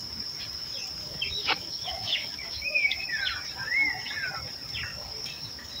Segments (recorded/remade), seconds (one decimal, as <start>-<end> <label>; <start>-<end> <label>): 0.0-1.0 recorded; 1.0-3.1 remade; 3.1-4.9 recorded; 4.9-5.8 remade